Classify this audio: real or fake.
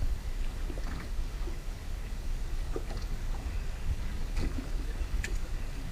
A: fake